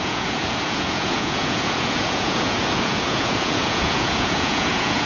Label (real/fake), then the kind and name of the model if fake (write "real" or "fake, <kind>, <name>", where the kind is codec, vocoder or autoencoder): fake, vocoder, Vocos